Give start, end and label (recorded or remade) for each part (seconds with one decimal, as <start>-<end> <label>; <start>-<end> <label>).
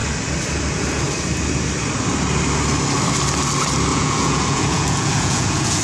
0.0-3.9 recorded; 3.9-5.8 remade